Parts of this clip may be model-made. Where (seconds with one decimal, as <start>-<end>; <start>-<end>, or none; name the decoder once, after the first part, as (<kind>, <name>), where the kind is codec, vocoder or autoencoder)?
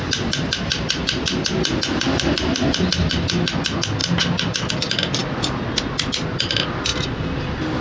none